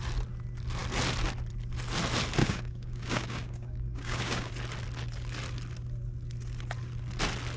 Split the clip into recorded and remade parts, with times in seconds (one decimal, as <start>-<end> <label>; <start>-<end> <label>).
0.0-2.4 recorded; 2.4-4.5 remade; 4.5-7.6 recorded